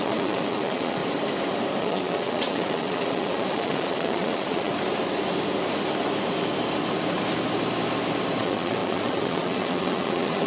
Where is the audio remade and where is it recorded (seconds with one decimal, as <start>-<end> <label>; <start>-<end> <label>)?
0.0-1.0 remade; 1.0-1.8 recorded; 1.8-4.7 remade; 4.7-8.4 recorded; 8.4-10.5 remade